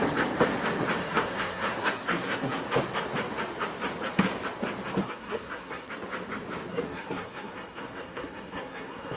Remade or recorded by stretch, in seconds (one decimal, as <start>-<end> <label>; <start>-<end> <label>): 0.0-1.0 recorded; 1.0-2.6 remade; 2.6-5.0 recorded; 5.0-5.9 remade; 5.9-6.7 recorded; 6.7-9.2 remade